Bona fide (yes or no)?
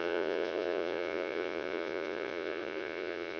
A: no